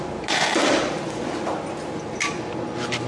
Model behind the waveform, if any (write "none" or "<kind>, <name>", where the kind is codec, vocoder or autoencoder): none